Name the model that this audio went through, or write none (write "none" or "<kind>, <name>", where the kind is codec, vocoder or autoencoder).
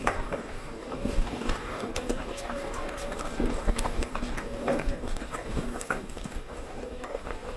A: codec, DAC